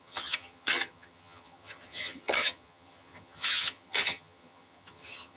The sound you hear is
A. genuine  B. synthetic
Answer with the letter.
B